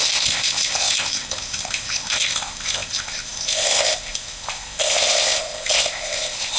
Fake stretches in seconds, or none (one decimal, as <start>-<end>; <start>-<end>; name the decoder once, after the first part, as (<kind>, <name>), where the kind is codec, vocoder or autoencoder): 0.0-6.6 (codec, ZipCodec)